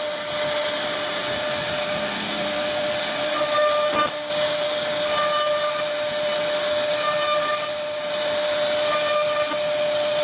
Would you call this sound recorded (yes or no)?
yes